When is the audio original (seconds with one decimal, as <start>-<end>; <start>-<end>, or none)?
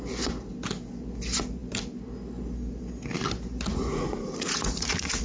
0.0-3.7